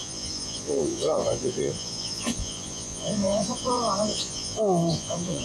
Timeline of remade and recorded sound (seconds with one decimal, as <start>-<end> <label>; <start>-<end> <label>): 0.0-5.4 remade